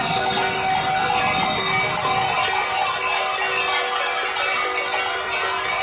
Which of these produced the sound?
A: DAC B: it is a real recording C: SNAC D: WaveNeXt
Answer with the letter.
B